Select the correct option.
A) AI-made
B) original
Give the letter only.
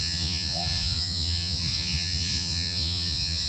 A